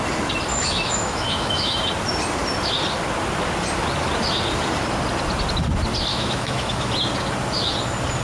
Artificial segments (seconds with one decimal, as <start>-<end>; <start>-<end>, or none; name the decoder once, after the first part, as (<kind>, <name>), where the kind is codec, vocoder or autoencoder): 0.5-1.8 (autoencoder, DAC-VAE); 6.1-6.9